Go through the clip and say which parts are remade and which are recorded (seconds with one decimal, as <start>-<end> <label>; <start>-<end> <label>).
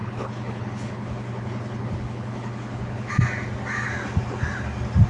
0.0-3.1 remade; 3.1-5.1 recorded